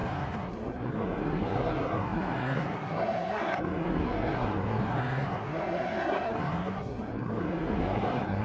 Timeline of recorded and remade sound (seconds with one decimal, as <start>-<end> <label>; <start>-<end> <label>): 0.0-8.4 remade